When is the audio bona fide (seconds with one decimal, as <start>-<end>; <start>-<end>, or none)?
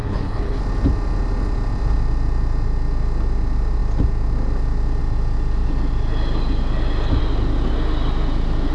0.6-8.7